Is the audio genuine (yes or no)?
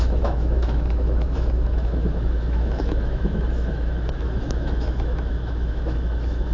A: no